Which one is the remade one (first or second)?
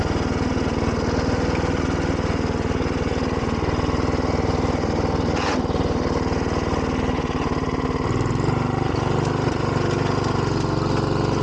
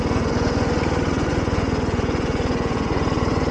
second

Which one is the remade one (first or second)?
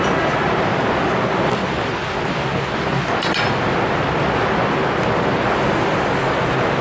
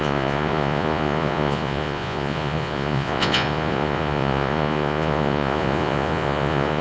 second